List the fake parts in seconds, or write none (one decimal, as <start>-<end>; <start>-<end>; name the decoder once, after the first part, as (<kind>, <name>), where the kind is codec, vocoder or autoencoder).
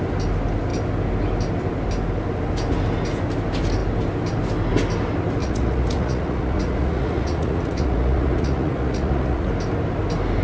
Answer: 5.4-9.5 (vocoder, Vocos)